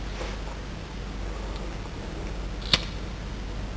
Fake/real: real